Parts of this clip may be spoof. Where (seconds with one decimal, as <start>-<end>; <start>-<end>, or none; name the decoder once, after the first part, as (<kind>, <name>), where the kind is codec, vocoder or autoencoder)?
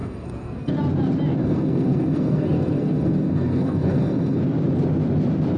0.0-0.7 (codec, SNAC); 1.4-4.4